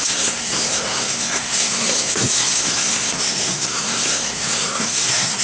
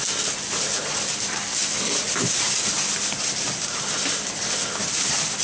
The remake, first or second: first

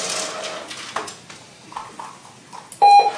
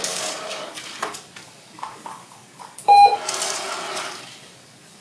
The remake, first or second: second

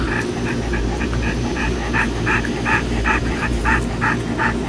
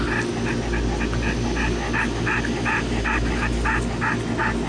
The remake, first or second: first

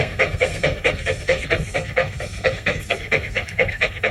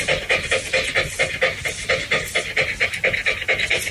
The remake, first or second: first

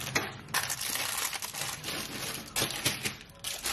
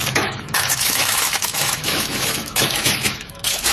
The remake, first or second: second